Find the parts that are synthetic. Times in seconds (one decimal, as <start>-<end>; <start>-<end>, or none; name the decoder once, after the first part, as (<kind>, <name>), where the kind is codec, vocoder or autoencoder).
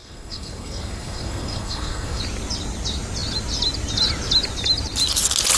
0.0-2.2 (codec, SNAC)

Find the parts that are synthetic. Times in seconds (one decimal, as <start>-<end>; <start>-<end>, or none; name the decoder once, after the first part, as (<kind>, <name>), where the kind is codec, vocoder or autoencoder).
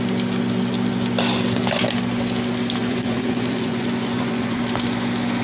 2.8-4.6 (vocoder, Vocos)